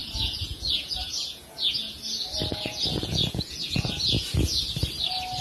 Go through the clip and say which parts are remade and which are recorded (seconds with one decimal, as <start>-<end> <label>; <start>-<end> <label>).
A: 0.0-2.0 remade; 2.0-2.5 recorded; 2.5-4.6 remade; 4.6-5.4 recorded